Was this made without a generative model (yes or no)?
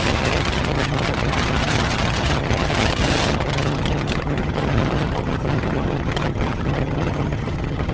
no